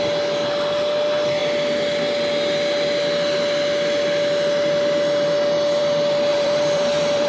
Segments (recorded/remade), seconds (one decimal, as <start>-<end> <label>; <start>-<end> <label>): 0.0-6.3 recorded; 6.3-7.3 remade